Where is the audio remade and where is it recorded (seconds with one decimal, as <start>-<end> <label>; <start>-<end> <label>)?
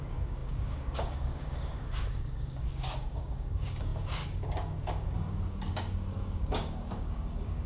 0.0-7.7 remade